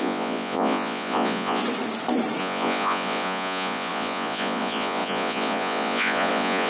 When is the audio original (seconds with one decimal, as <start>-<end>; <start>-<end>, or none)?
1.6-2.4